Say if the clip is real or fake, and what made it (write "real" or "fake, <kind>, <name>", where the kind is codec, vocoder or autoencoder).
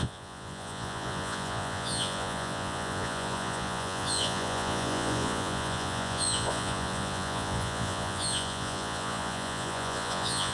fake, vocoder, Vocos